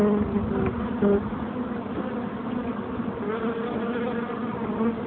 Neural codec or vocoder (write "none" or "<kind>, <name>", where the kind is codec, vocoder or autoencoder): none